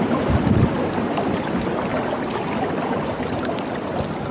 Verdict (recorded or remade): recorded